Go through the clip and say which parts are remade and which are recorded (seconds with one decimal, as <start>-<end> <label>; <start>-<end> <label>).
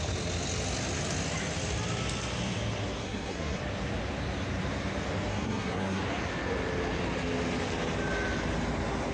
0.0-3.0 recorded; 3.0-3.6 remade; 3.6-5.3 recorded; 5.3-6.0 remade; 6.0-9.1 recorded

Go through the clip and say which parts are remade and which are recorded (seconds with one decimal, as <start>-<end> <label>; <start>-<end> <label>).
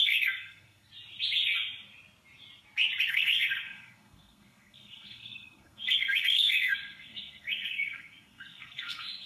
0.0-0.9 remade; 0.9-3.1 recorded; 3.1-9.3 remade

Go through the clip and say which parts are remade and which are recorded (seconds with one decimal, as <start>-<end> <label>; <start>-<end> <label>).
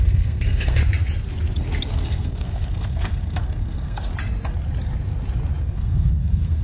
0.0-0.8 remade; 0.8-1.9 recorded; 1.9-4.1 remade; 4.1-5.6 recorded; 5.6-6.6 remade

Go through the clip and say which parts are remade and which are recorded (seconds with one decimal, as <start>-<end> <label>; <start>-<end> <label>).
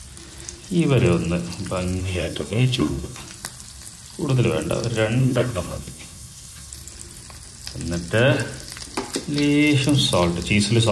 0.0-2.0 recorded; 2.0-3.2 remade; 3.2-5.2 recorded; 5.2-6.7 remade; 6.7-10.9 recorded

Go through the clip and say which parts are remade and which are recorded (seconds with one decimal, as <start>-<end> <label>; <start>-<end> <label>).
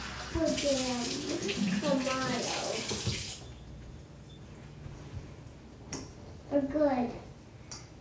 0.0-8.0 recorded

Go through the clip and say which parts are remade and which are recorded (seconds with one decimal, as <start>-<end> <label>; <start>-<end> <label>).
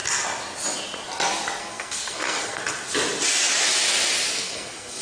0.0-1.6 recorded; 1.6-2.6 remade; 2.6-4.3 recorded; 4.3-5.0 remade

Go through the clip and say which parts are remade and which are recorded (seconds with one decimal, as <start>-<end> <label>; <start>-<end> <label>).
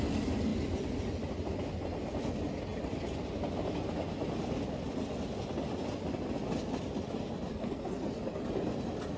0.0-7.5 recorded; 7.5-8.1 remade; 8.1-9.2 recorded